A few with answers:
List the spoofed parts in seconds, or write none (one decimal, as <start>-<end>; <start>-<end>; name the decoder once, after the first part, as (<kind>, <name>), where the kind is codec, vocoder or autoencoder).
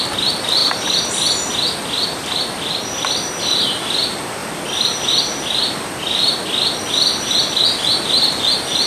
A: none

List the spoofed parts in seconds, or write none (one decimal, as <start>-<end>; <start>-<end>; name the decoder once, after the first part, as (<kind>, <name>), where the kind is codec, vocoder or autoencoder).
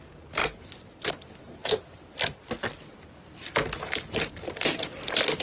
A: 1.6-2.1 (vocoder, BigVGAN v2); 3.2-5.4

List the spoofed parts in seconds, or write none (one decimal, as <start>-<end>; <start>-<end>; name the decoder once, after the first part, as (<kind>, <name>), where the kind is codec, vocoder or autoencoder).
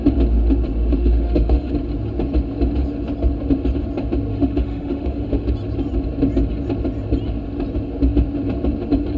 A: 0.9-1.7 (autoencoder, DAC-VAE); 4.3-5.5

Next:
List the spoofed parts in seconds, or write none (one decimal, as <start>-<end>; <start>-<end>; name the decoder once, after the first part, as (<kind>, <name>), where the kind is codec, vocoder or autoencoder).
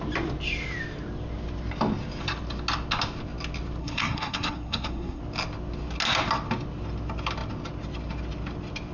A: 3.8-5.2 (codec, SNAC)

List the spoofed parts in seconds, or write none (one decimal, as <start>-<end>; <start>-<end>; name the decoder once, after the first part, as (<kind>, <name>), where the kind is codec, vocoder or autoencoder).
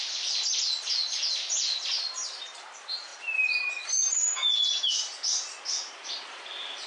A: 4.2-4.9 (vocoder, Vocos)